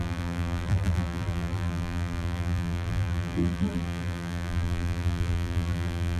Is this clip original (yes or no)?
no